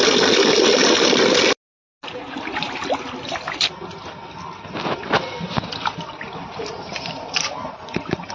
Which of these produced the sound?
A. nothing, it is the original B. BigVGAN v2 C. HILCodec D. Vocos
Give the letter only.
A